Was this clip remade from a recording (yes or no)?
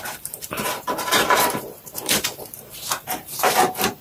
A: yes